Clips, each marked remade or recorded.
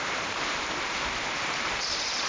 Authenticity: remade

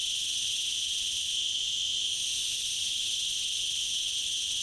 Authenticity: recorded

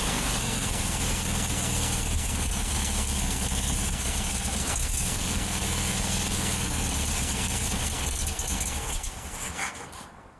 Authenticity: remade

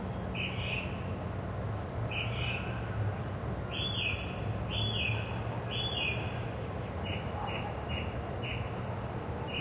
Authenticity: recorded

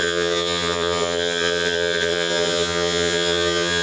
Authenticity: remade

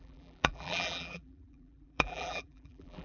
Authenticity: remade